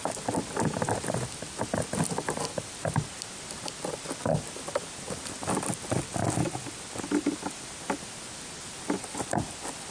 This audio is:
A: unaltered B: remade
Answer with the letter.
A